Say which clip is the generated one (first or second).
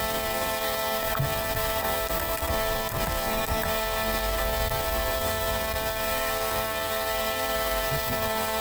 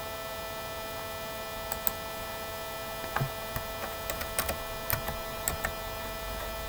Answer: first